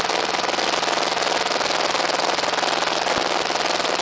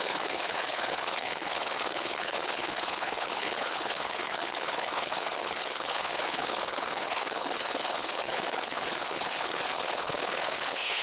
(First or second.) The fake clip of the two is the second